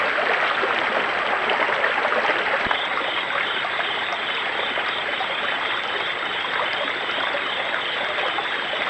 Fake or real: real